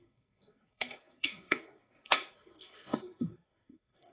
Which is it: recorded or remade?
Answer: remade